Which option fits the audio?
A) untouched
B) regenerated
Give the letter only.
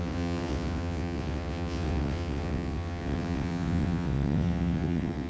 B